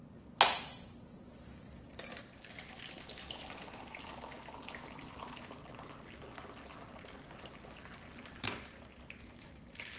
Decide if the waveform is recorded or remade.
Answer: recorded